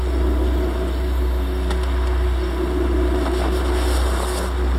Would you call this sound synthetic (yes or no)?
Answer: no